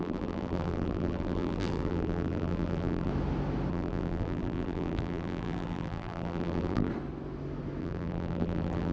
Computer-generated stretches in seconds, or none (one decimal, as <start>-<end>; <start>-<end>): 0.0-3.1; 3.7-6.9; 7.8-8.9